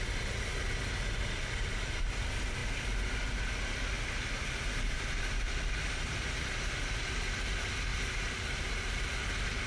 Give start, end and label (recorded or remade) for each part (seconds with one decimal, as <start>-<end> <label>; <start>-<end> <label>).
0.0-9.7 recorded

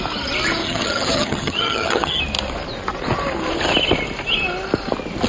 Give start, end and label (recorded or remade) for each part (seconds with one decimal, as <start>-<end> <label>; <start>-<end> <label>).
0.0-0.6 recorded; 0.6-2.2 remade; 2.2-5.3 recorded

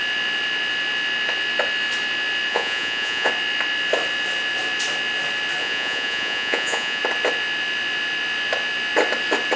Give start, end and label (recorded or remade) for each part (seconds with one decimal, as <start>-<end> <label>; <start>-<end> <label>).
0.0-2.5 recorded; 2.5-3.3 remade; 3.3-5.6 recorded; 5.6-7.0 remade; 7.0-9.6 recorded

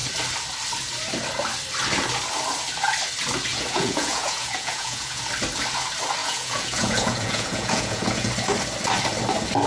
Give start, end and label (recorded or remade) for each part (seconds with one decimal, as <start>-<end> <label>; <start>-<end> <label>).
0.0-3.5 recorded; 3.5-5.2 remade; 5.2-6.2 recorded; 6.2-8.3 remade; 8.3-9.7 recorded

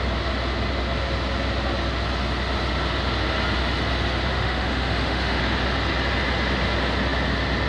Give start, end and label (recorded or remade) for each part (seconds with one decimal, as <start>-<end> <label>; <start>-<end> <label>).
0.0-4.3 recorded; 4.3-5.4 remade; 5.4-7.7 recorded